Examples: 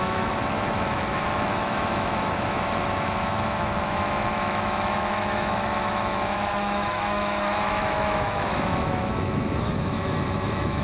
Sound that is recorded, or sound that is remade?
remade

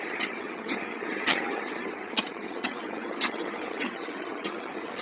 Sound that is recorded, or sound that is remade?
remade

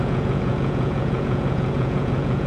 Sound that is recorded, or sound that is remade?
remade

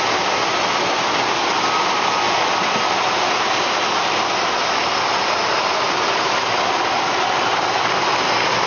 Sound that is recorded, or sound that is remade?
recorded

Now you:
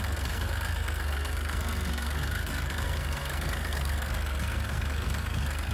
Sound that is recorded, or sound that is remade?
remade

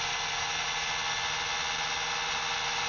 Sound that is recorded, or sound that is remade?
recorded